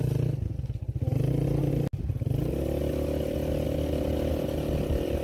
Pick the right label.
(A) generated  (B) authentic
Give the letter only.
B